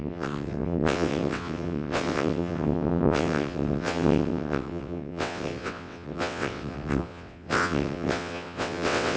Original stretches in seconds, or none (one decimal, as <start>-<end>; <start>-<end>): none